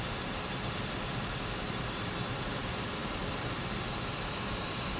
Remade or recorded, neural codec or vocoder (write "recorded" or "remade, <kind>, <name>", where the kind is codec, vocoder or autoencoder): remade, vocoder, BigVGAN v2